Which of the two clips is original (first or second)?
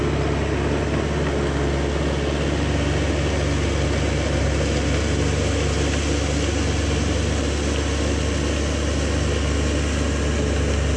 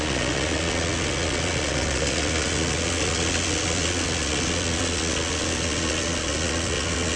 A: first